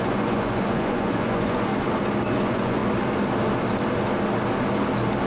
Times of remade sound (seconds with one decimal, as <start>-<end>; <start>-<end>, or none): 0.0-1.7; 2.3-2.8